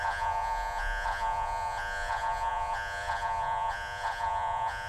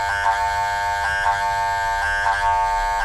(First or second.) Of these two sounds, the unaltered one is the second